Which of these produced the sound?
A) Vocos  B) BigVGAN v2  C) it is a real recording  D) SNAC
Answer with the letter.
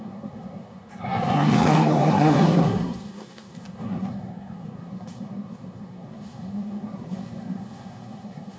D